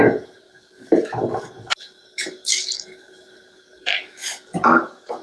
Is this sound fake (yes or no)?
yes